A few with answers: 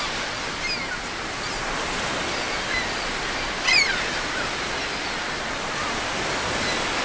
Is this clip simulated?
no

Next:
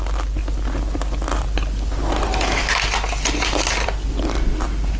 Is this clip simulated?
yes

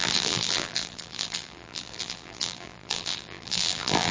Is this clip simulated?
yes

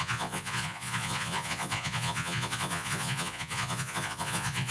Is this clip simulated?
yes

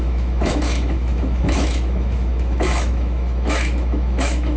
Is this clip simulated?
yes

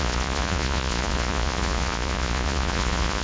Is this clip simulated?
yes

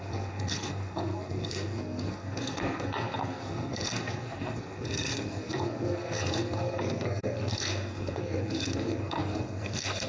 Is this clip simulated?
yes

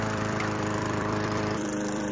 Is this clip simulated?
yes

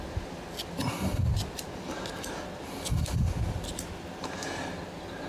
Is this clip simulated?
no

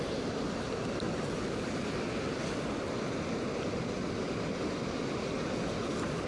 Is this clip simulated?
no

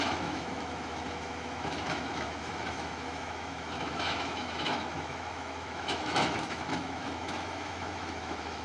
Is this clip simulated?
yes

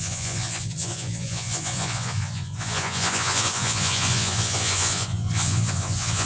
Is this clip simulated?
yes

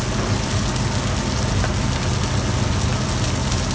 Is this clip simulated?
no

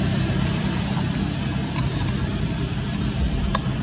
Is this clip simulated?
no